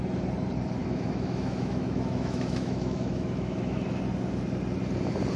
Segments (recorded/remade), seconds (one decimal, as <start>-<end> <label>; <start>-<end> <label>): 0.0-0.8 recorded; 0.8-4.0 remade; 4.0-5.4 recorded